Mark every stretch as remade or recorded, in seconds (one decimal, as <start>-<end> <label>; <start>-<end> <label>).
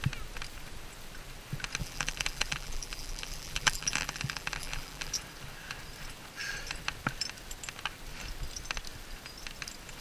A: 0.0-1.8 recorded; 1.8-5.2 remade; 5.2-10.0 recorded